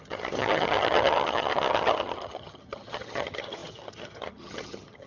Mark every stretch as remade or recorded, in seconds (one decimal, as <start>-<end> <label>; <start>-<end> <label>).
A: 0.0-5.1 remade